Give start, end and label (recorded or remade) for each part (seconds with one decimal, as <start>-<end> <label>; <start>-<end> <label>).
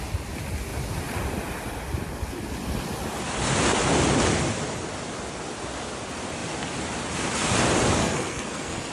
0.0-8.0 recorded; 8.0-8.9 remade